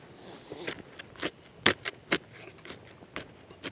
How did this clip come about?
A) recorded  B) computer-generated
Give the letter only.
A